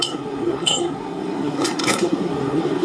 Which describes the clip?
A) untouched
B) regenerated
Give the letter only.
B